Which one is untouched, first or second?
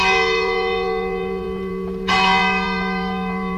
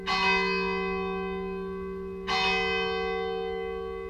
second